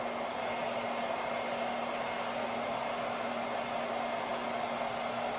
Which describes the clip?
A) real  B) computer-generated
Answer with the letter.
A